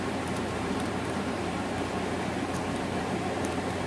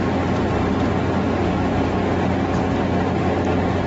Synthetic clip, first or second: first